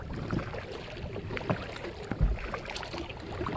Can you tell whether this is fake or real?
real